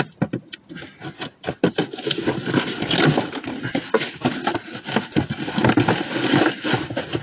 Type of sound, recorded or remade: recorded